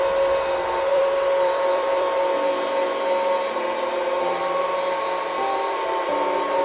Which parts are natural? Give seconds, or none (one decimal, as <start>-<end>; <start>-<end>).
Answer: 0.0-0.9; 2.2-6.6